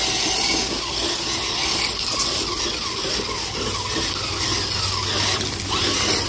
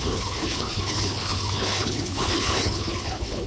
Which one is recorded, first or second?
first